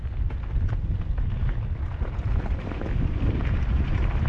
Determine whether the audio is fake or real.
fake